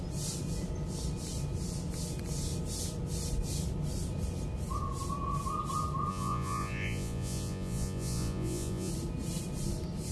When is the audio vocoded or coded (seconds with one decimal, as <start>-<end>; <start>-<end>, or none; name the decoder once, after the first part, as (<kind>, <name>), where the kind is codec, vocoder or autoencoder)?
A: 6.1-8.9 (vocoder, Vocos)